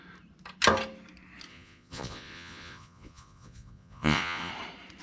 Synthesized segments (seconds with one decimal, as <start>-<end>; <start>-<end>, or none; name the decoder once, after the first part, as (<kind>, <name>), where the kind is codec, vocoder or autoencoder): 1.5-4.5 (vocoder, Vocos)